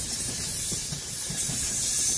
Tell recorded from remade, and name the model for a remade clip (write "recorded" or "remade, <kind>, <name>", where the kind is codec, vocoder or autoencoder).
remade, vocoder, BigVGAN v2